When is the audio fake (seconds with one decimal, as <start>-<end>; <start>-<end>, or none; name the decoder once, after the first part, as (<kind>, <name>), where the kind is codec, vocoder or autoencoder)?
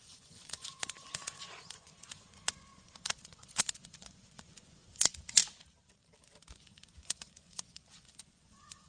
0.0-5.4 (vocoder, Vocos); 6.5-8.9